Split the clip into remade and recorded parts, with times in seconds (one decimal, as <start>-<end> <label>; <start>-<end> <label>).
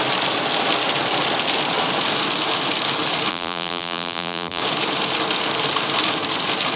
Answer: 0.0-3.3 recorded; 3.3-4.6 remade; 4.6-6.8 recorded